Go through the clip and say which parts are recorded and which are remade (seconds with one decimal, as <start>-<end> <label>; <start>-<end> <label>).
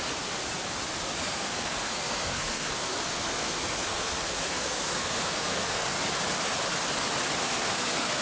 0.0-1.2 recorded; 1.2-5.9 remade; 5.9-7.4 recorded; 7.4-8.2 remade